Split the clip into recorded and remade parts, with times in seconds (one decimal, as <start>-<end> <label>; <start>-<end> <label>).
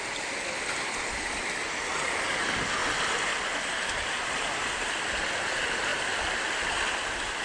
0.0-2.8 recorded; 2.8-4.9 remade; 4.9-7.4 recorded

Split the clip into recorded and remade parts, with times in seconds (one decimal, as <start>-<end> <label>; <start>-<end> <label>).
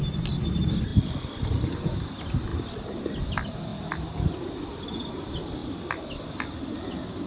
0.0-7.3 recorded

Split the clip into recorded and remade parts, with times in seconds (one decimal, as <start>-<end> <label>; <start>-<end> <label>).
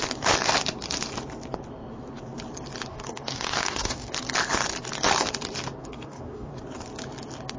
0.0-2.9 recorded; 2.9-4.1 remade; 4.1-5.8 recorded; 5.8-6.5 remade; 6.5-7.6 recorded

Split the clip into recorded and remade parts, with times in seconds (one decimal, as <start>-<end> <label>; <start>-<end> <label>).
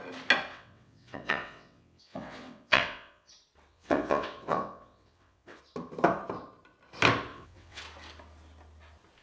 0.0-0.5 recorded; 0.5-3.3 remade; 3.3-3.7 recorded; 3.7-5.6 remade; 5.6-7.3 recorded; 7.3-7.8 remade; 7.8-9.2 recorded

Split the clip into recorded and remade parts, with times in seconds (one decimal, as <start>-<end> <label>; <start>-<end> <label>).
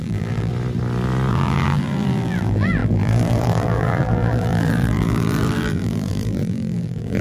0.0-0.5 remade; 0.5-1.3 recorded; 1.3-7.2 remade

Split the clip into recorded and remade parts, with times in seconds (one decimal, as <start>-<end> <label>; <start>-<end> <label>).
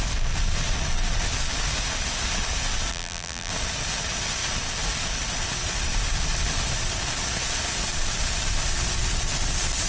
0.0-2.9 recorded; 2.9-3.5 remade; 3.5-9.9 recorded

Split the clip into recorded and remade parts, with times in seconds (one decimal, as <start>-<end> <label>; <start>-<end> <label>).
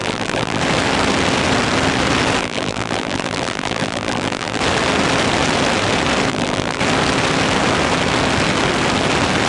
0.0-0.6 remade; 0.6-2.4 recorded; 2.4-4.6 remade; 4.6-6.3 recorded; 6.3-6.8 remade; 6.8-9.5 recorded